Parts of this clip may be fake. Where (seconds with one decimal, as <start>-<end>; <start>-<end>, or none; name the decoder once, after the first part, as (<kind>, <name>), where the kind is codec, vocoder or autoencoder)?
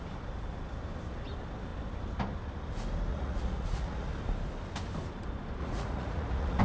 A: 3.1-4.1 (vocoder, Vocos); 5.6-6.6